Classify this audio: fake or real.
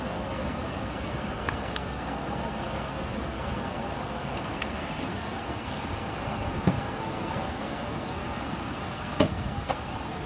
fake